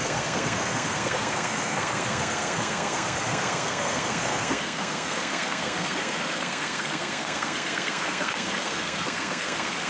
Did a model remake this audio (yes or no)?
yes